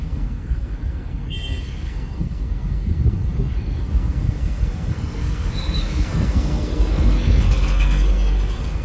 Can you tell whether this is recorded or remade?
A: remade